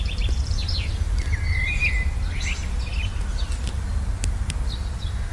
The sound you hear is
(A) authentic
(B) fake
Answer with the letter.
A